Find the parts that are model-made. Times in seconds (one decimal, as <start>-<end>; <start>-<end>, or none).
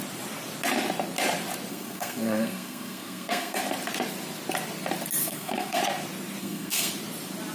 1.7-3.6; 5.2-5.8; 6.4-6.9